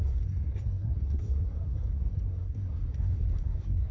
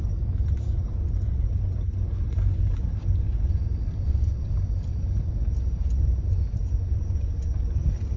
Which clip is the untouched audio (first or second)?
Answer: second